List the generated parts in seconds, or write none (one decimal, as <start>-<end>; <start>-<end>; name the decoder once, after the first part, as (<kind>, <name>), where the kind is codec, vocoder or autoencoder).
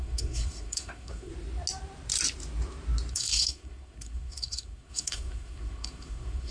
0.0-1.3 (codec, SNAC); 3.1-6.5